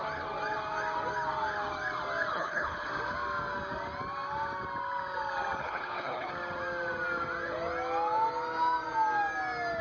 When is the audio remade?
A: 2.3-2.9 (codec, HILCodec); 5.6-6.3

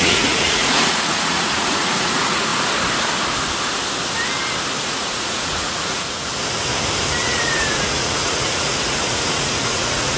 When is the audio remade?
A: 0.0-2.5 (vocoder, Vocos); 4.8-6.3; 7.1-10.2

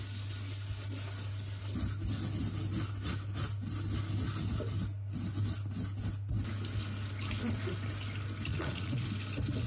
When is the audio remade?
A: 8.5-9.0 (vocoder, Vocos)

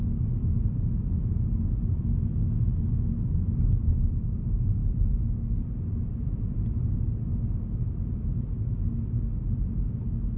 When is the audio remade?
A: none

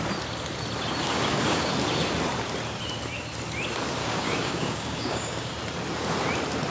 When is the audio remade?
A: 1.0-1.7 (codec, DAC); 4.0-5.5

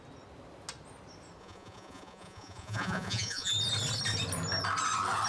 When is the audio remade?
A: 1.4-3.5 (vocoder, Vocos)

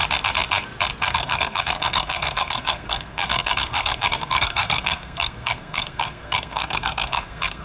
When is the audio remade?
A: 1.0-7.6 (codec, SNAC)